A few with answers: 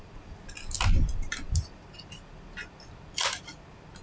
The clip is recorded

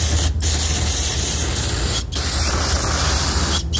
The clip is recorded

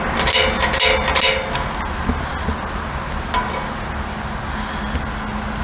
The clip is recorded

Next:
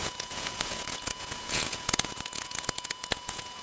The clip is remade